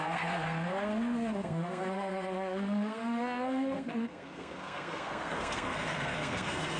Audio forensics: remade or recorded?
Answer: remade